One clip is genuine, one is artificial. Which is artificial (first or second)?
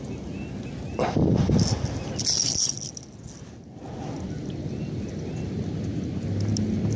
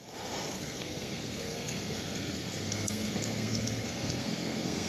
second